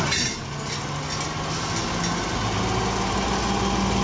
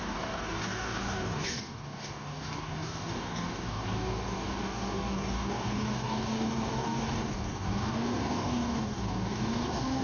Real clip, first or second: first